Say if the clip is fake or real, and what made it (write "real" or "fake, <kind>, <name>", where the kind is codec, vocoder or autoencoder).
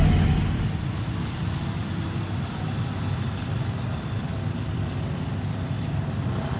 real